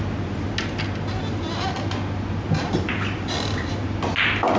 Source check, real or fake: real